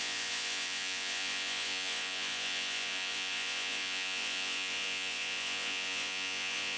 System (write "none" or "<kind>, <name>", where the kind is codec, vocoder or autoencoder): vocoder, Vocos